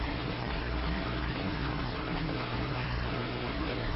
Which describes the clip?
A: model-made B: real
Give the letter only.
A